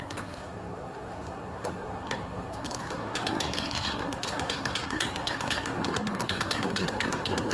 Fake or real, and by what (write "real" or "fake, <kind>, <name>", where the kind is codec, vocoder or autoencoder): fake, codec, SNAC